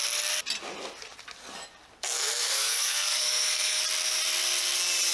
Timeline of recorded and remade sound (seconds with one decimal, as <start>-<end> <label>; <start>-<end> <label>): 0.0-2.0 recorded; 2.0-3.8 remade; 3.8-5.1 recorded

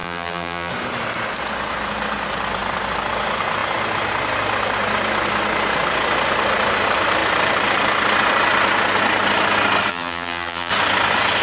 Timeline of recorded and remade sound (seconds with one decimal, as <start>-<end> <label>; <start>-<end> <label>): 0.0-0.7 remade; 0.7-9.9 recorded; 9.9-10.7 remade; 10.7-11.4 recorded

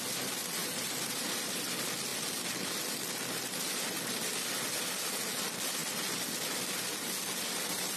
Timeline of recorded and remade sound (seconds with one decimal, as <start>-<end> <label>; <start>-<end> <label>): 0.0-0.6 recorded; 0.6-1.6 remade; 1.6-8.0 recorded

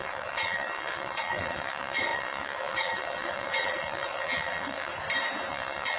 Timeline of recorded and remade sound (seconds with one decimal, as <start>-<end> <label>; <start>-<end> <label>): 0.0-4.9 remade; 4.9-5.5 recorded; 5.5-6.0 remade

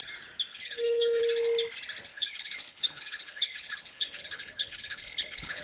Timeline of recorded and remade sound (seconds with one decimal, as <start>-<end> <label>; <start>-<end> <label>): 0.0-0.5 recorded; 0.5-1.2 remade; 1.2-2.1 recorded; 2.1-5.6 remade